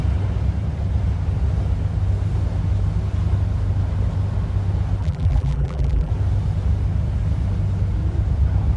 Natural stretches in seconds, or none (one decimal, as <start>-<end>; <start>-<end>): 0.0-5.0; 6.1-8.8